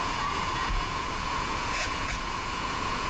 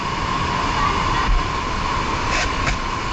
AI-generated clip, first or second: first